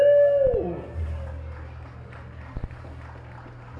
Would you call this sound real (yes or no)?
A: yes